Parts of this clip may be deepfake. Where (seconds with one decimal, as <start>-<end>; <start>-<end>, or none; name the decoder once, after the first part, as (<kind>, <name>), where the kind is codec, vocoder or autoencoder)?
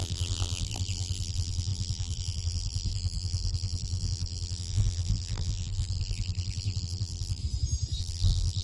0.0-7.4 (vocoder, BigVGAN v2); 8.0-8.6